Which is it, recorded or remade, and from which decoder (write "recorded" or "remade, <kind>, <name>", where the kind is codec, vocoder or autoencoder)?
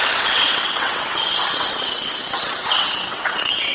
remade, vocoder, WaveNeXt